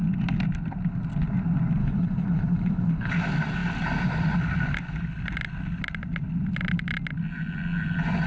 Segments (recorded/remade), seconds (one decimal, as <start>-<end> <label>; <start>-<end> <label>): 0.0-1.8 recorded; 1.8-3.1 remade; 3.1-8.3 recorded